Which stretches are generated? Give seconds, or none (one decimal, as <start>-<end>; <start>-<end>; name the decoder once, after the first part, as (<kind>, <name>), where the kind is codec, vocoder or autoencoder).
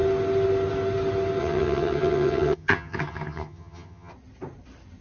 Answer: 1.4-4.1 (vocoder, HiFi-GAN)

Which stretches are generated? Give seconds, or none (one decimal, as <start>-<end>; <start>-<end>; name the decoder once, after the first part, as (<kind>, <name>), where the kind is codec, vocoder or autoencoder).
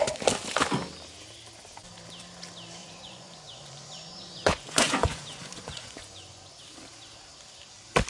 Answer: 2.8-6.6 (vocoder, Vocos)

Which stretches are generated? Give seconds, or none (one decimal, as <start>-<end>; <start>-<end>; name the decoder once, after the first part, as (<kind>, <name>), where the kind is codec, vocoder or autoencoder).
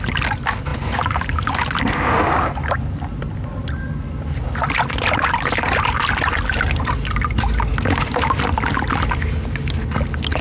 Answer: none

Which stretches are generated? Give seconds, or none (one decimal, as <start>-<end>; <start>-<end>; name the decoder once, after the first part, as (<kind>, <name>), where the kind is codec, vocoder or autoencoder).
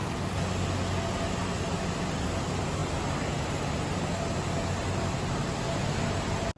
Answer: none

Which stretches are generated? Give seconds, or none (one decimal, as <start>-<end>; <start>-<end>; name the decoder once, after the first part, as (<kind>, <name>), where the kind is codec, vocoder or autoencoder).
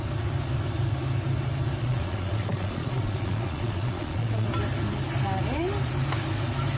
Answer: 1.8-4.5 (vocoder, Vocos)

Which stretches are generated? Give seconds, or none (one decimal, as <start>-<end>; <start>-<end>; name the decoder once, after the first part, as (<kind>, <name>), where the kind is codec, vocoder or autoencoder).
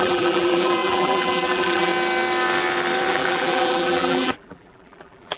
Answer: 0.0-1.9 (vocoder, BigVGAN v2); 3.1-5.4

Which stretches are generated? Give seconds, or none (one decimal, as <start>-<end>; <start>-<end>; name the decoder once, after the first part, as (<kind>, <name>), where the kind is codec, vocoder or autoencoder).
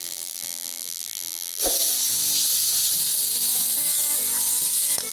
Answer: 0.0-1.6 (vocoder, BigVGAN v2)